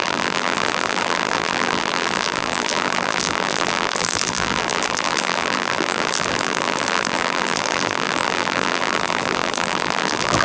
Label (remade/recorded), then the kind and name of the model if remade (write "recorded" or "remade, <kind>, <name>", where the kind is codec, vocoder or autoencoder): remade, vocoder, BigVGAN v2